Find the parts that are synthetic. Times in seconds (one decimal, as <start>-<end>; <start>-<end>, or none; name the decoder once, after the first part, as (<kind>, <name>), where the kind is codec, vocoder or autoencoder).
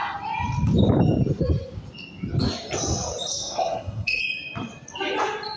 3.3-4.2 (codec, SNAC)